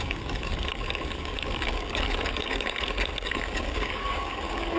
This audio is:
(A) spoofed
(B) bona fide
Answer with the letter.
A